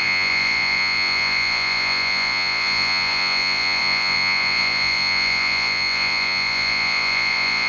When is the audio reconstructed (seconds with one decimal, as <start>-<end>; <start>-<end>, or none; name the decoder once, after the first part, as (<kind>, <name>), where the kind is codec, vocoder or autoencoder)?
0.0-7.7 (vocoder, Vocos)